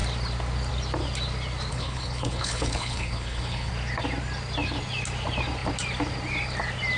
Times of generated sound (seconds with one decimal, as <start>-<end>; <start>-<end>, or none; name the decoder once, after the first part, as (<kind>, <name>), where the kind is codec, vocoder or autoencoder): 1.7-3.7 (codec, HILCodec)